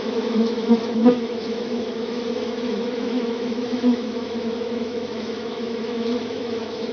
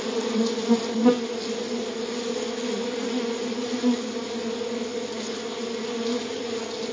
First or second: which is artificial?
first